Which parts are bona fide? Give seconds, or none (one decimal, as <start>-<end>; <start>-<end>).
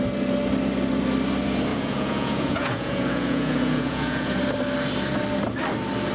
0.0-1.7; 4.4-6.1